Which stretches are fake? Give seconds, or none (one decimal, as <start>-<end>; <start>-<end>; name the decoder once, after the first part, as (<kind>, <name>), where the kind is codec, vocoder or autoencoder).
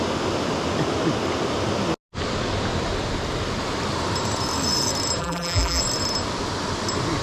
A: 5.2-5.8 (vocoder, BigVGAN v2)